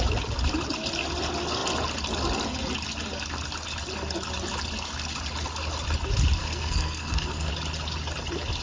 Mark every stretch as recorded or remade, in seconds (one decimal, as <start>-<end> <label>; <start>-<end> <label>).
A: 0.0-6.4 recorded; 6.4-7.5 remade; 7.5-8.6 recorded